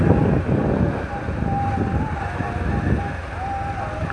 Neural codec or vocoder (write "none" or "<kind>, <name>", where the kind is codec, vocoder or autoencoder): none